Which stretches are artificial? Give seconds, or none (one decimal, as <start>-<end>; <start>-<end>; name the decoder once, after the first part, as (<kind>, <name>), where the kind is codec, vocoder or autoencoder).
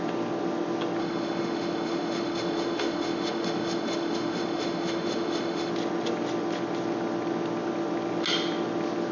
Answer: 1.0-5.7 (autoencoder, DAC-VAE)